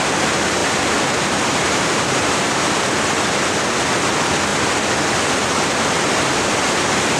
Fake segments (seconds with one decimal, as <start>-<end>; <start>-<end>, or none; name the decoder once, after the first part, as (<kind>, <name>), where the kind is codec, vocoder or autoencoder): 0.6-2.7 (vocoder, BigVGAN v2)